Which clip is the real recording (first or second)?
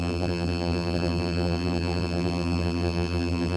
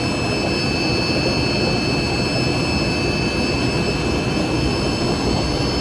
second